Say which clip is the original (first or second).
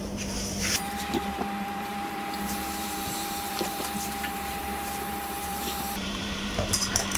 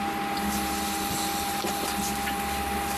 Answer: second